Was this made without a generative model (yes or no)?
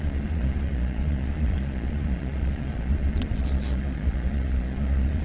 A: no